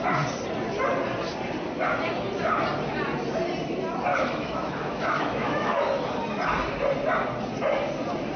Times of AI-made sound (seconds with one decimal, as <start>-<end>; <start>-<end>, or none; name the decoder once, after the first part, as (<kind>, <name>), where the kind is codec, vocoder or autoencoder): 4.1-5.8 (autoencoder, DAC-VAE)